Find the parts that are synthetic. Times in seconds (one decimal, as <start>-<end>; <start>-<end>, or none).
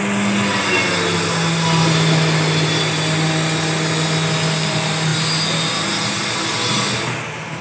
none